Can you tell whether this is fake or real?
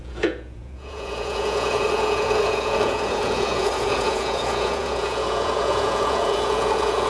fake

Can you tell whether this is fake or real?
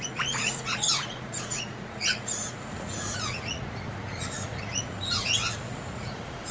fake